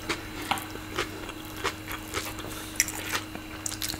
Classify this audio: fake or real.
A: real